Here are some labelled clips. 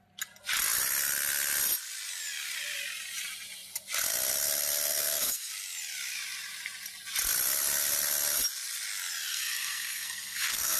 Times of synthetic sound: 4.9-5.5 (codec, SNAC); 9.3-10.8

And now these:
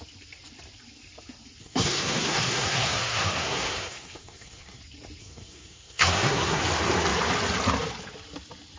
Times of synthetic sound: 1.6-4.8 (codec, SNAC); 5.2-6.6

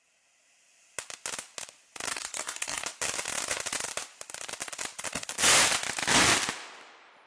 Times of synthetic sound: 2.1-2.8 (codec, SNAC)

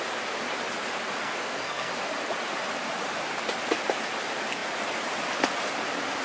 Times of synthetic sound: 1.2-1.9 (codec, SNAC)

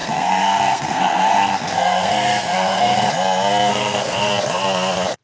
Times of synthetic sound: 0.0-3.1 (codec, SNAC); 3.7-4.3

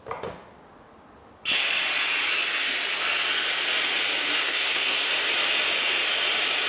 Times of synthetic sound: 4.4-5.1 (codec, SNAC)

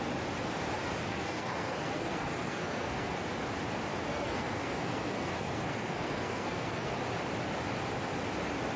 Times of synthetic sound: 1.0-3.2 (codec, SNAC); 4.1-7.0

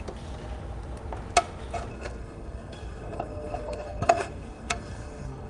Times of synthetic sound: 1.9-5.5 (codec, SNAC)